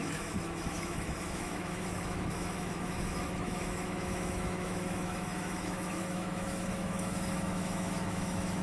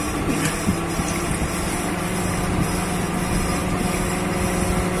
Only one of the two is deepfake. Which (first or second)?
first